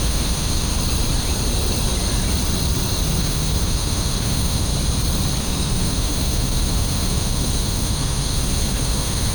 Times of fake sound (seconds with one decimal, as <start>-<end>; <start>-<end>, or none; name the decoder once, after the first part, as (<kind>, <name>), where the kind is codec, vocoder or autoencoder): 0.0-0.7 (autoencoder, DAC-VAE); 3.2-4.7; 5.4-9.3

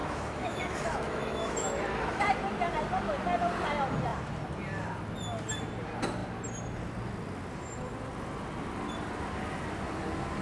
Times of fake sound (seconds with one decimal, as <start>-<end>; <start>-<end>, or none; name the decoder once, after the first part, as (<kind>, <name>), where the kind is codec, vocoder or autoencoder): 0.0-2.2 (autoencoder, DAC-VAE)

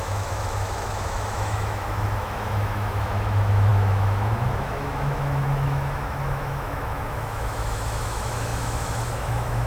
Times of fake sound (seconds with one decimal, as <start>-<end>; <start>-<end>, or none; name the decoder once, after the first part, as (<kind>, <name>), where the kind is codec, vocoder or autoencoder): 0.0-9.7 (autoencoder, DAC-VAE)

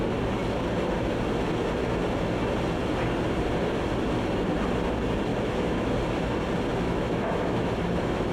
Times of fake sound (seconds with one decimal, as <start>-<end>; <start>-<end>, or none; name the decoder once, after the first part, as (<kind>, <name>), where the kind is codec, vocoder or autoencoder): 5.3-5.9 (autoencoder, DAC-VAE); 6.7-7.7